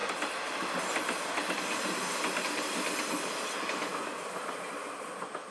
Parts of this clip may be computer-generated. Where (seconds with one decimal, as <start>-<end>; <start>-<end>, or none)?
none